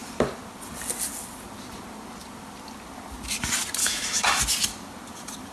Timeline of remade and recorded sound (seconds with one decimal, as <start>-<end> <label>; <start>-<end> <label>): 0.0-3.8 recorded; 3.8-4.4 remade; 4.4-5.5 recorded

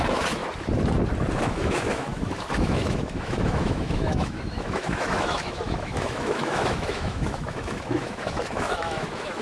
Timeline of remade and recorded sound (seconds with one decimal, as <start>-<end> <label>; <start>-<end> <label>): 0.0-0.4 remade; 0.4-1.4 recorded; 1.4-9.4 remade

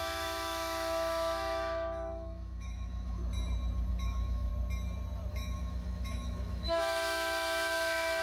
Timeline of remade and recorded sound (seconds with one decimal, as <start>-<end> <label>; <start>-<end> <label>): 0.0-3.2 remade; 3.2-3.9 recorded; 3.9-4.5 remade; 4.5-5.3 recorded; 5.3-8.2 remade

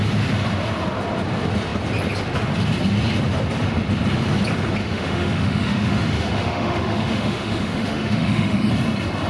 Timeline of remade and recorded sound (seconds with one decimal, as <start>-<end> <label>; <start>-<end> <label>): 0.0-4.8 recorded; 4.8-8.7 remade; 8.7-9.3 recorded

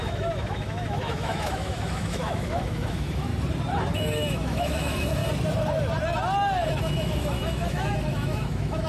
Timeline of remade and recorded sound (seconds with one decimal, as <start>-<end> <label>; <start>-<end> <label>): 0.0-3.3 remade; 3.3-3.9 recorded; 3.9-5.2 remade; 5.2-6.7 recorded; 6.7-8.9 remade

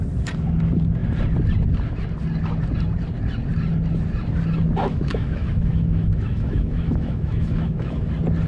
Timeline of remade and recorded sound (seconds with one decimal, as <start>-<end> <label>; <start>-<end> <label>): 0.0-4.8 recorded; 4.8-8.1 remade; 8.1-8.5 recorded